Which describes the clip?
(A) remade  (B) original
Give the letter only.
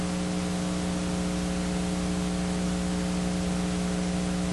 B